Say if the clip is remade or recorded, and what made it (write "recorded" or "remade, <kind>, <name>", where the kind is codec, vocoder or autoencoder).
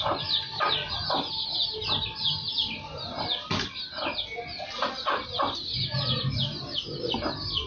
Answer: recorded